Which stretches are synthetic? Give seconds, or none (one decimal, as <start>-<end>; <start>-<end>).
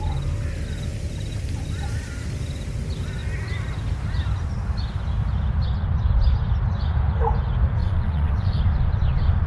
7.8-8.6